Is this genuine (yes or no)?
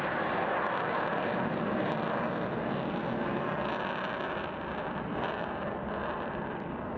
yes